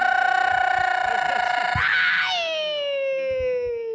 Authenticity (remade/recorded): recorded